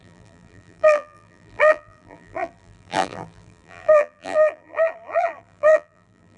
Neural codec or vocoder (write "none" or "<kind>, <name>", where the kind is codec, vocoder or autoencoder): vocoder, BigVGAN v2